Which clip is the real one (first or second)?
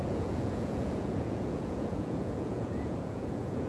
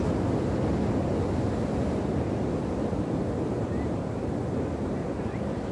second